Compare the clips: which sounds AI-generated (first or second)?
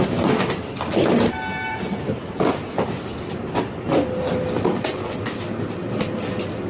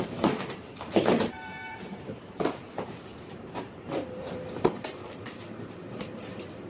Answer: second